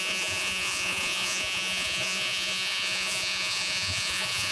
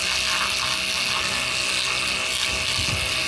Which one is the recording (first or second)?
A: second